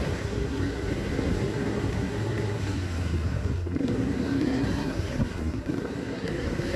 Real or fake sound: fake